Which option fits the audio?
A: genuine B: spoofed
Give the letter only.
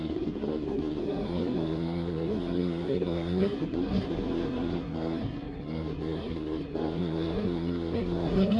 B